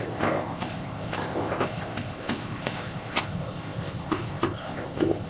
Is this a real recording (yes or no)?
no